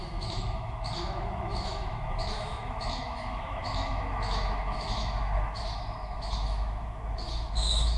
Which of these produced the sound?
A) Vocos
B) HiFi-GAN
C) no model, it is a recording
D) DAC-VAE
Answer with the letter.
D